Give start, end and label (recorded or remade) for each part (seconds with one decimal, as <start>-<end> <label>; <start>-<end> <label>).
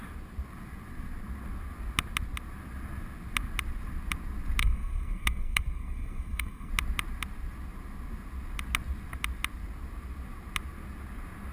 0.0-4.6 recorded; 4.6-6.7 remade; 6.7-11.5 recorded